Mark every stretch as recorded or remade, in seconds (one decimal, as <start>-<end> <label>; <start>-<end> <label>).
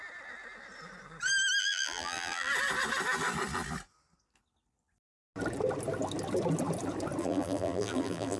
0.0-1.6 recorded; 1.6-2.5 remade; 2.5-7.2 recorded; 7.2-8.4 remade